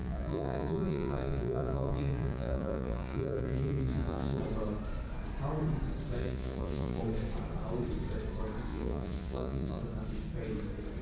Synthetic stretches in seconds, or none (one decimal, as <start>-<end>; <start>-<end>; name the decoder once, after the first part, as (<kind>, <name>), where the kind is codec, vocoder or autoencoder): 0.0-4.4 (vocoder, Vocos); 6.2-7.0; 8.7-9.8

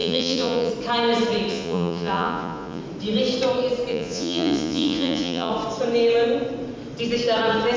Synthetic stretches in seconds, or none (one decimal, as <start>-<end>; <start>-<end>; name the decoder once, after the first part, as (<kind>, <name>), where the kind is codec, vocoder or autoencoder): 0.0-0.7 (vocoder, Vocos); 1.5-2.8; 3.9-5.5

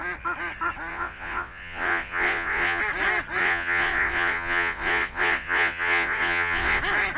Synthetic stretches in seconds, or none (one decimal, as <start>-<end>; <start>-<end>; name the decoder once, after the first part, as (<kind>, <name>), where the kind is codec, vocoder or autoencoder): 0.9-2.8 (vocoder, Vocos); 3.4-6.8

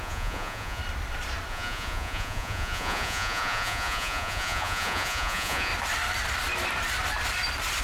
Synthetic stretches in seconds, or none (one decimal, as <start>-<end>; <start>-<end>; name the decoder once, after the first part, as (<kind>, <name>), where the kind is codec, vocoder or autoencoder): 0.0-0.8 (vocoder, Vocos); 1.5-5.7

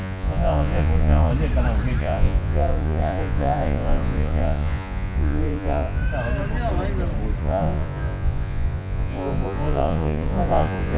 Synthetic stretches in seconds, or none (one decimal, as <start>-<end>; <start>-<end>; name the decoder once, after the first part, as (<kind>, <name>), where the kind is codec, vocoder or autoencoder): 0.0-1.3 (vocoder, Vocos); 2.0-6.0; 7.4-11.0